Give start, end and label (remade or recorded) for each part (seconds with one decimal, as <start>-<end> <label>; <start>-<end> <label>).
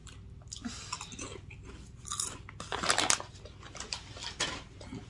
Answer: 0.0-5.1 recorded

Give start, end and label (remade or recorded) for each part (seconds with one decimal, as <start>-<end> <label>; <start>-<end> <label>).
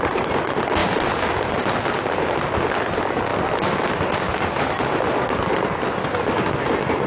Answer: 0.0-7.1 recorded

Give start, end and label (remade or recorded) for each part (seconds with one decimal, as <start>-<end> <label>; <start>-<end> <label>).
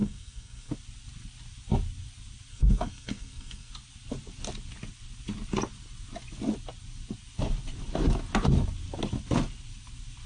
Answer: 0.0-0.7 remade; 0.7-2.5 recorded; 2.5-3.7 remade; 3.7-10.3 recorded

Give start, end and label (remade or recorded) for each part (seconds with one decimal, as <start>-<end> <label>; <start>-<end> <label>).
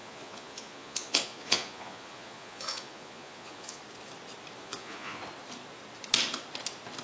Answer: 0.0-3.8 remade; 3.8-4.6 recorded; 4.6-5.2 remade; 5.2-7.0 recorded